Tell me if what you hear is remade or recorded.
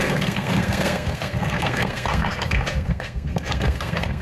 remade